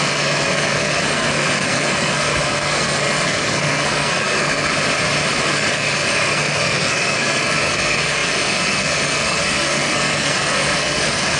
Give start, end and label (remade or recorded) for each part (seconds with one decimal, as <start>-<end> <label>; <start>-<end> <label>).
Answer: 0.0-4.7 remade; 4.7-5.4 recorded; 5.4-11.4 remade